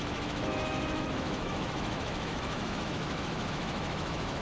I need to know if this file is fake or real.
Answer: fake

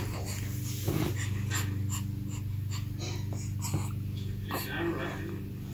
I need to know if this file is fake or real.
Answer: real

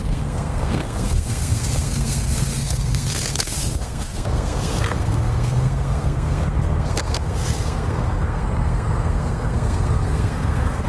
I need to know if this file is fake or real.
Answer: fake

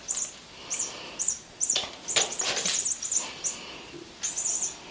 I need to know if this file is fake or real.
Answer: real